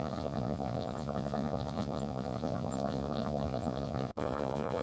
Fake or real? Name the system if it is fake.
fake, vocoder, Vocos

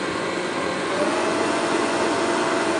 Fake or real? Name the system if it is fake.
fake, vocoder, Vocos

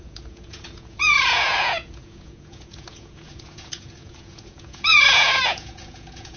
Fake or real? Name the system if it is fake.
fake, vocoder, Vocos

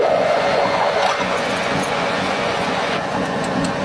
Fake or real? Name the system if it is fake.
fake, vocoder, Vocos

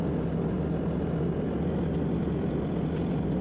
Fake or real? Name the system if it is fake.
real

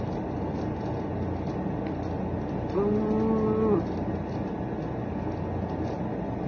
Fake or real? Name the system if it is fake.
real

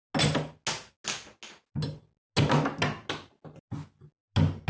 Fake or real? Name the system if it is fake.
real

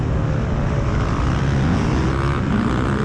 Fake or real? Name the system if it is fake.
real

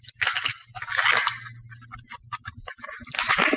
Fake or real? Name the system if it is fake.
real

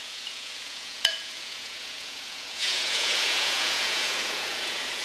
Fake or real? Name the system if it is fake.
fake, vocoder, Vocos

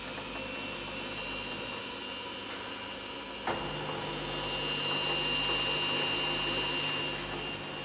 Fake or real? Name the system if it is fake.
real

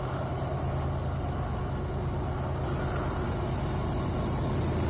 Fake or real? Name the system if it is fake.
real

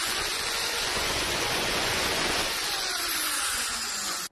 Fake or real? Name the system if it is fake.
fake, vocoder, Vocos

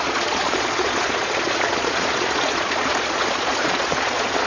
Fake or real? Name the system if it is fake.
fake, vocoder, Vocos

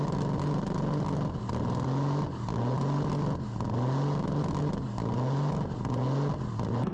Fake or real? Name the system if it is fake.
real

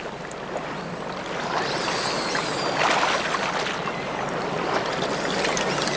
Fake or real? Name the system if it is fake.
real